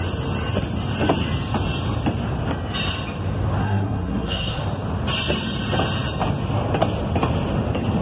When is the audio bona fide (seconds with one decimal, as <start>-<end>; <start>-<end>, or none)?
0.0-3.6; 4.6-8.0